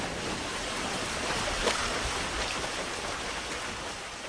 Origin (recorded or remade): recorded